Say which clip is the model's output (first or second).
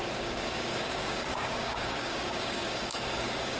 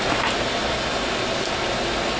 first